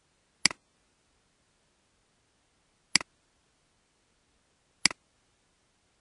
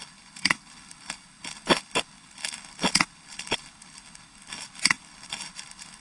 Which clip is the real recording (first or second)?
first